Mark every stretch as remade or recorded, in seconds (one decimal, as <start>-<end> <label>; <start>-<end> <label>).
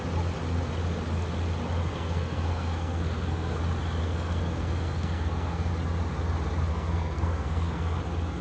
0.0-1.9 recorded; 1.9-3.6 remade; 3.6-4.0 recorded; 4.0-5.7 remade; 5.7-6.7 recorded; 6.7-8.0 remade; 8.0-8.4 recorded